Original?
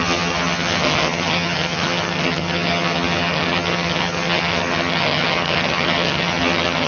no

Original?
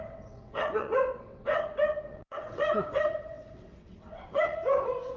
no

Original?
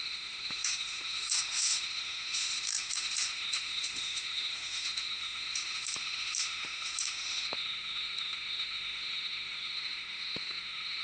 no